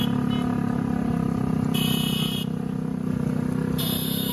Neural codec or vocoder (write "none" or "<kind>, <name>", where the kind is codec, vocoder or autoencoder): none